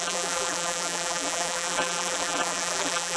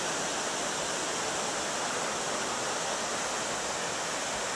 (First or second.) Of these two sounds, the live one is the second